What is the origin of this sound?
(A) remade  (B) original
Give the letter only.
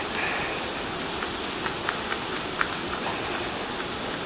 B